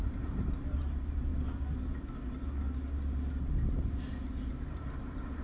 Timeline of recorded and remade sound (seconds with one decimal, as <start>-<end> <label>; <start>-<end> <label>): 0.0-1.3 remade; 1.3-4.5 recorded; 4.5-5.4 remade